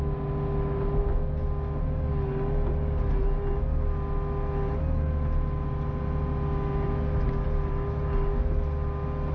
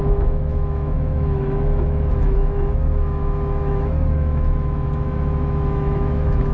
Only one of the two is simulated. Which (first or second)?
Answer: second